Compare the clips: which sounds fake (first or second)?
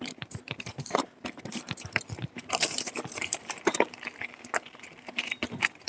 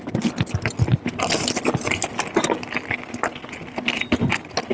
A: first